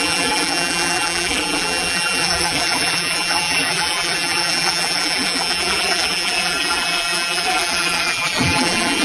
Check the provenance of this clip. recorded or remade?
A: remade